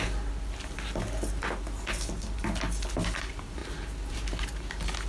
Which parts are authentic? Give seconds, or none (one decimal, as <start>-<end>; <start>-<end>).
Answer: 0.0-5.1